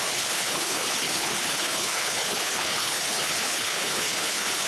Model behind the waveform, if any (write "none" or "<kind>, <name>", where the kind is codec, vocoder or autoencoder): codec, HILCodec